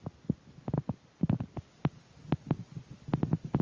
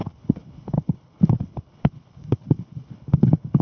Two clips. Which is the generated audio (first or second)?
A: second